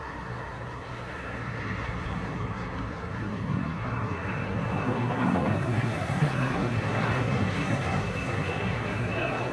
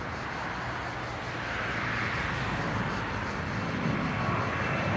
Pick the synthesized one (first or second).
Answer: first